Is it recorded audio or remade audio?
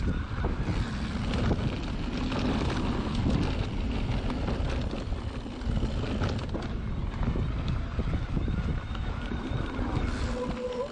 recorded